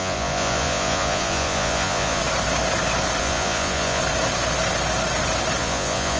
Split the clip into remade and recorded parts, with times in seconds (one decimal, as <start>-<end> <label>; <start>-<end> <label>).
0.0-2.2 remade; 2.2-3.2 recorded; 3.2-4.0 remade; 4.0-5.6 recorded; 5.6-6.2 remade